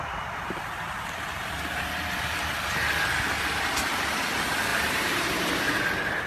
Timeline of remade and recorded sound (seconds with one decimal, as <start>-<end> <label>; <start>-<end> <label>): 0.0-4.7 recorded; 4.7-5.8 remade; 5.8-6.3 recorded